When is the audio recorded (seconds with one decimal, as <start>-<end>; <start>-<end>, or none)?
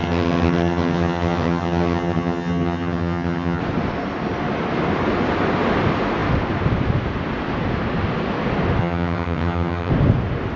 3.6-8.8; 9.9-10.6